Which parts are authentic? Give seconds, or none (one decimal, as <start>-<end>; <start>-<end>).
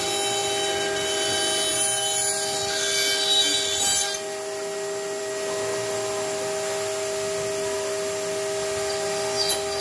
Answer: 0.0-9.8